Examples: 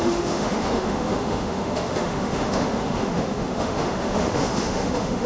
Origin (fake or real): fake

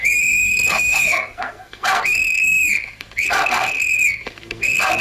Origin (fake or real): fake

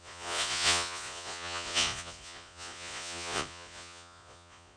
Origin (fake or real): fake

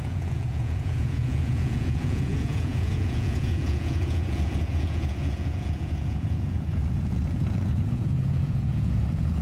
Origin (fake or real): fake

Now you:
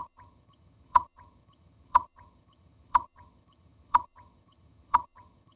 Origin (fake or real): fake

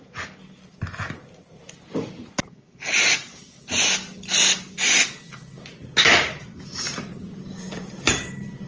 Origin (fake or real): real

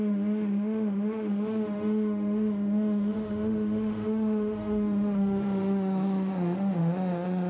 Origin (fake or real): fake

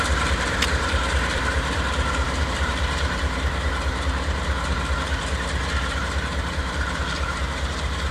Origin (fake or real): fake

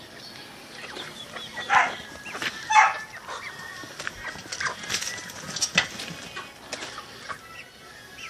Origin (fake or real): real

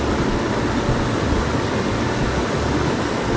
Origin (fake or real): real